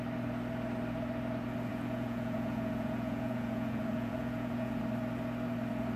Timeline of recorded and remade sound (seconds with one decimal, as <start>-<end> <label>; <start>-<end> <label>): 0.0-1.7 recorded; 1.7-4.8 remade; 4.8-6.0 recorded

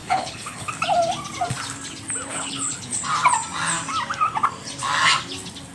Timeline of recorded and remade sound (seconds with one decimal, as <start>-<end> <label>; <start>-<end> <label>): 0.0-0.7 remade; 0.7-2.3 recorded; 2.3-3.0 remade; 3.0-5.7 recorded

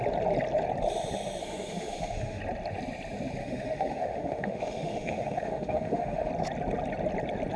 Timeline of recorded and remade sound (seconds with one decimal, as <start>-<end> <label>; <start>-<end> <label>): 0.0-1.4 recorded; 1.4-2.4 remade; 2.4-3.4 recorded; 3.4-6.3 remade; 6.3-7.6 recorded

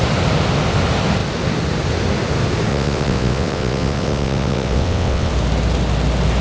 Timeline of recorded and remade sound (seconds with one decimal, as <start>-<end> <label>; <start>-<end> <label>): 0.0-2.7 recorded; 2.7-5.3 remade; 5.3-6.4 recorded